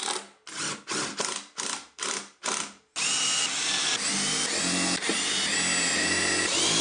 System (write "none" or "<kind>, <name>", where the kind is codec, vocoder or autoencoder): none